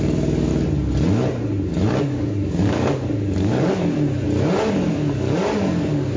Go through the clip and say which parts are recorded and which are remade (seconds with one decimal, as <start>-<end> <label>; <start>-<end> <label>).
0.0-0.5 remade; 0.5-2.0 recorded; 2.0-3.7 remade; 3.7-4.9 recorded; 4.9-6.2 remade